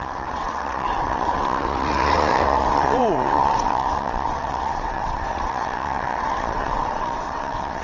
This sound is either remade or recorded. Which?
remade